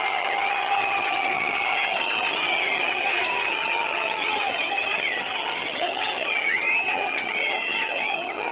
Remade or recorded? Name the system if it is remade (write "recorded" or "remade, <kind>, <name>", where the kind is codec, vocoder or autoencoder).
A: remade, vocoder, HiFi-GAN